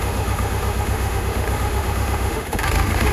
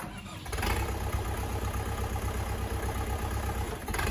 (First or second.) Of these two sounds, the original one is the second